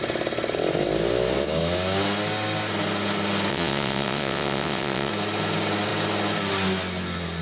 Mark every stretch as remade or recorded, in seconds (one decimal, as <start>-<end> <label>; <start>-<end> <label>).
0.0-3.5 recorded; 3.5-5.1 remade; 5.1-7.4 recorded